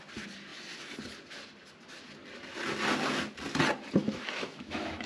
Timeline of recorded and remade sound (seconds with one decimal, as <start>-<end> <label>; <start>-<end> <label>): 0.0-4.0 recorded; 4.0-5.1 remade